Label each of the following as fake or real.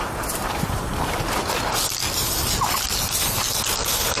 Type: real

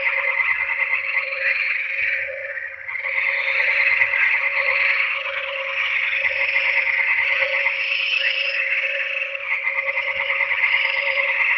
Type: fake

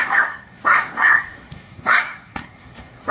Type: fake